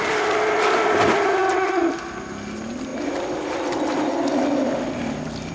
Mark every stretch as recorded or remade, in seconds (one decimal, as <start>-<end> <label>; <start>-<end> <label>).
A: 0.0-5.5 recorded